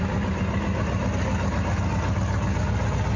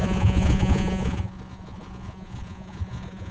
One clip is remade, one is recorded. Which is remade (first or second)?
second